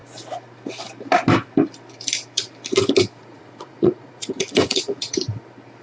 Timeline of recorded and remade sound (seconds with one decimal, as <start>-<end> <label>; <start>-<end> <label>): 0.0-3.2 recorded; 3.2-5.2 remade; 5.2-5.8 recorded